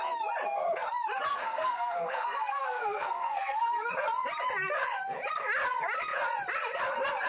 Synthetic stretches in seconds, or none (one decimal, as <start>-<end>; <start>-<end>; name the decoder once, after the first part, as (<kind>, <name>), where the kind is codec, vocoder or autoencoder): 1.3-3.9 (codec, SNAC)